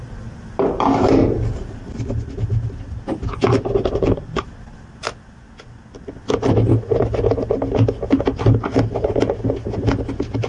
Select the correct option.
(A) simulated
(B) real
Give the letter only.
B